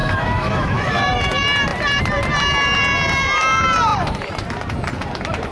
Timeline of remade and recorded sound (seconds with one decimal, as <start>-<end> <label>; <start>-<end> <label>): 0.0-1.2 remade; 1.2-5.5 recorded